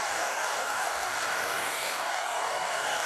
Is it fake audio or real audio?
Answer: fake